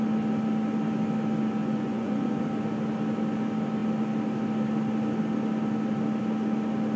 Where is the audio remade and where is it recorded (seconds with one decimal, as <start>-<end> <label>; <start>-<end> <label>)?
0.0-1.6 recorded; 1.6-2.4 remade; 2.4-7.0 recorded